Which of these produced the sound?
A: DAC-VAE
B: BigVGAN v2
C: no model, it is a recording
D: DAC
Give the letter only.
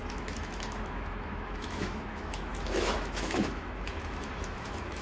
A